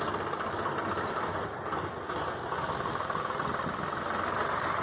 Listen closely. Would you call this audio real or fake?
real